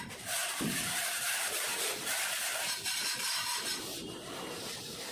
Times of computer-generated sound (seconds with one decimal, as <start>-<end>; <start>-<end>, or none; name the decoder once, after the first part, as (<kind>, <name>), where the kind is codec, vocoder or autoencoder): 0.0-5.1 (vocoder, BigVGAN v2)